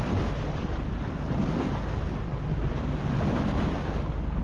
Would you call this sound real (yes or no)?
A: yes